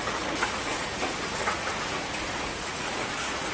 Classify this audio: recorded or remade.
remade